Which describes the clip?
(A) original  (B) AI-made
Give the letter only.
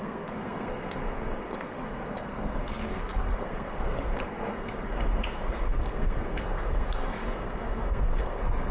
B